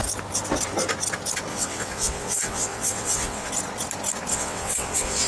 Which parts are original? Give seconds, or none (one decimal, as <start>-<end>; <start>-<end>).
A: 0.0-1.5; 3.5-4.3